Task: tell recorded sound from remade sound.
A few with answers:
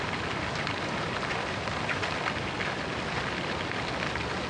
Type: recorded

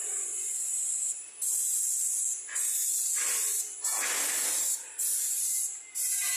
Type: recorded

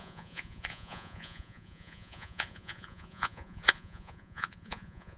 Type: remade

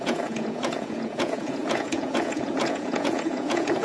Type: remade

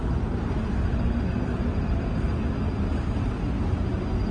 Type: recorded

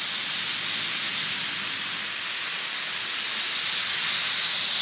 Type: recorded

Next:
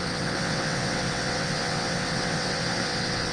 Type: remade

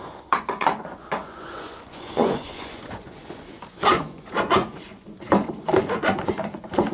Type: remade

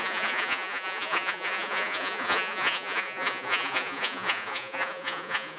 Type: remade